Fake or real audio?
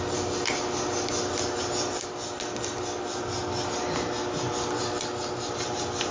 real